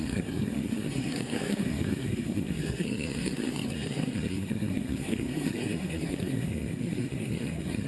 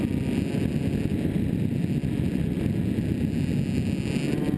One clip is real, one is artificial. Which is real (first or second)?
second